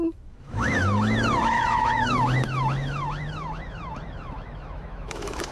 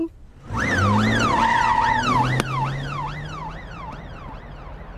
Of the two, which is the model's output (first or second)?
first